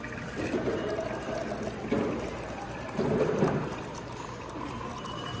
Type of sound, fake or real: real